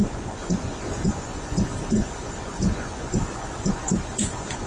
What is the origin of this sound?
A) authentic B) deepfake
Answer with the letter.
B